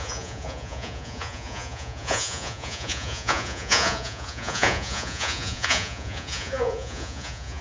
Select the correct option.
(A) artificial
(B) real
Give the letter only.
A